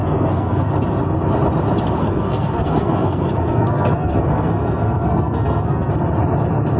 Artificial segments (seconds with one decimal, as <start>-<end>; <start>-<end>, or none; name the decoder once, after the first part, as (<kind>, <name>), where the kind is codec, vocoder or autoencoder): 0.0-0.7 (codec, SNAC); 2.0-5.9